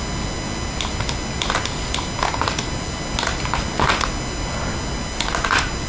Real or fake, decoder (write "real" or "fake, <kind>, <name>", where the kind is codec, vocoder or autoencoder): real